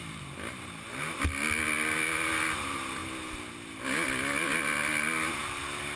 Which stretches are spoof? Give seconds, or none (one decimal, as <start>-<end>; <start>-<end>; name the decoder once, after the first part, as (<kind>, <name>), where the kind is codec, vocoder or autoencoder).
none